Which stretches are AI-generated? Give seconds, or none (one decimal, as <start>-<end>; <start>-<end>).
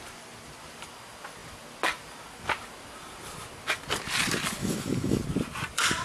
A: 4.6-5.2